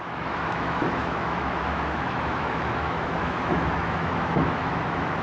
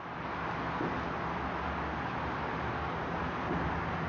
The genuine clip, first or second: second